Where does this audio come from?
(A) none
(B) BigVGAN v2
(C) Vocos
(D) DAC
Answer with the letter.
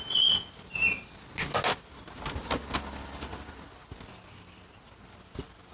A